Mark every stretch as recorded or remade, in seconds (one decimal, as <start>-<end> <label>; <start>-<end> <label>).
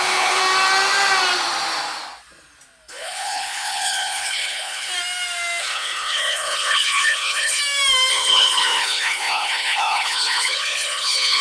0.0-0.4 remade; 0.4-2.9 recorded; 2.9-4.9 remade; 4.9-5.6 recorded; 5.6-7.6 remade; 7.6-8.1 recorded; 8.1-11.4 remade